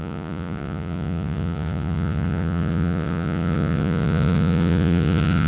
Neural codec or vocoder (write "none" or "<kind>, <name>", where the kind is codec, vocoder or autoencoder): vocoder, Vocos